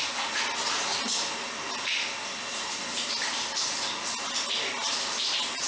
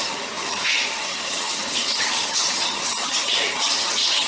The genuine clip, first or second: first